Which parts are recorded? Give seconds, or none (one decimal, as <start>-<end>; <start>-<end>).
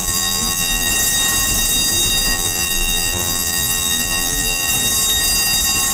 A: 0.9-2.3; 4.7-5.9